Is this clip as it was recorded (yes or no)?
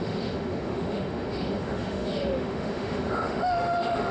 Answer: no